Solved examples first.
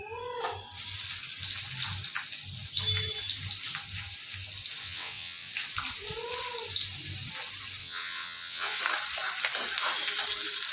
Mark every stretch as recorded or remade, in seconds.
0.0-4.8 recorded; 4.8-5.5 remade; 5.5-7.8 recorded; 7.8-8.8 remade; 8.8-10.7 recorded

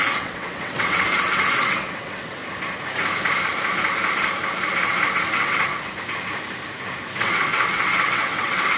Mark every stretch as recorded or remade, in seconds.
0.0-2.4 remade; 2.4-5.3 recorded; 5.3-5.7 remade; 5.7-7.2 recorded; 7.2-8.8 remade

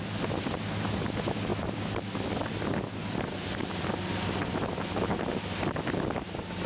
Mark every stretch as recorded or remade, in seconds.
0.0-6.7 recorded

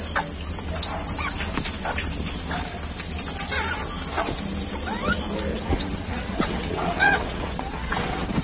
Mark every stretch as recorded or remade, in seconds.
0.0-5.5 recorded; 5.5-8.4 remade

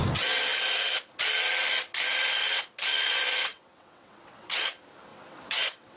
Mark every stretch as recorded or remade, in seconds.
0.0-3.5 recorded; 3.5-4.6 remade; 4.6-5.1 recorded; 5.1-6.0 remade

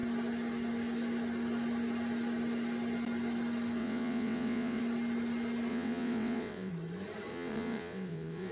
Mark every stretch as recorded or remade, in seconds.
0.0-3.8 recorded; 3.8-4.8 remade; 4.8-5.7 recorded; 5.7-6.7 remade; 6.7-7.3 recorded; 7.3-8.5 remade

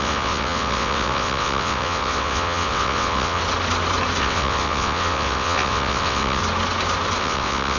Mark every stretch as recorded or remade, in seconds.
0.0-3.4 remade; 3.4-4.2 recorded; 4.2-6.4 remade; 6.4-7.2 recorded; 7.2-7.8 remade